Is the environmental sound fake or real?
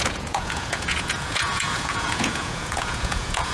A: fake